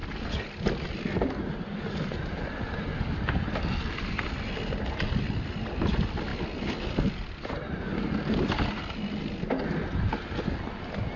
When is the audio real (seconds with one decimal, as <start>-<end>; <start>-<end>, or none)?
0.0-11.2